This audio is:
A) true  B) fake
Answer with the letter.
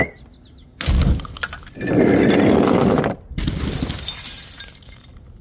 A